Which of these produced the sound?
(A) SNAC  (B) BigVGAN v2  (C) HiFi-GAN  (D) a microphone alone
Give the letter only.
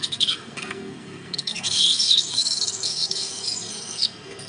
A